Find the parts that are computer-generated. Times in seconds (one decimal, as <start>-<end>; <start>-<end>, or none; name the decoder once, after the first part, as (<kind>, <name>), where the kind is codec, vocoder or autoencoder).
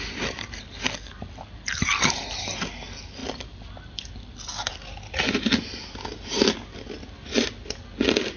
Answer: none